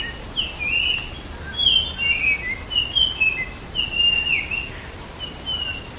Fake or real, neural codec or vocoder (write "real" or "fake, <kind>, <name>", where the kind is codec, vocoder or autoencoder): real